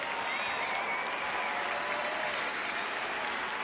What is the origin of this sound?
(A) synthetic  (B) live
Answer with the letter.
B